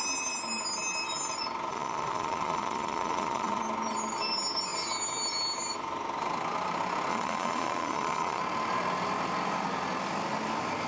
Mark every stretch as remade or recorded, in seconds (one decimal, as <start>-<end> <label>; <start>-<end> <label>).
0.0-1.7 recorded; 1.7-3.6 remade; 3.6-7.1 recorded; 7.1-8.4 remade; 8.4-10.9 recorded